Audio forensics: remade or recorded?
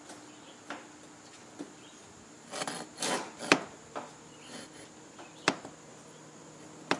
recorded